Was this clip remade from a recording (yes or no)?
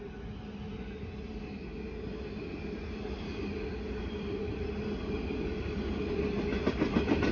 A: no